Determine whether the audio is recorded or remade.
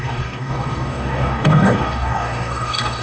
remade